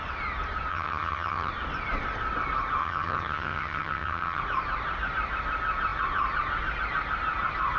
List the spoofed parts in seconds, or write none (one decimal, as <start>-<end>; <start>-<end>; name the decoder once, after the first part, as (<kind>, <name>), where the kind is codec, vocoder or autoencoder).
0.7-1.5 (vocoder, HiFi-GAN); 2.8-4.4